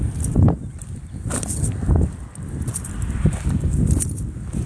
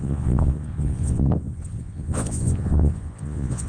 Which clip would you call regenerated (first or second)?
second